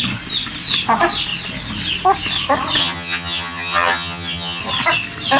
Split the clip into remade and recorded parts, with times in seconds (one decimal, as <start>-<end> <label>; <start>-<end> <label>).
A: 0.0-2.8 recorded; 2.8-4.6 remade; 4.6-5.4 recorded